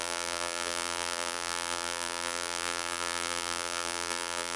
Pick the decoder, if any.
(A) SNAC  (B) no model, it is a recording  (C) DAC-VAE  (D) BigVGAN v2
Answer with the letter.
D